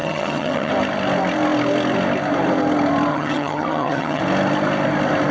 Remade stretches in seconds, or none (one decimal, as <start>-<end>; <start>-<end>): 0.0-0.7; 3.1-4.2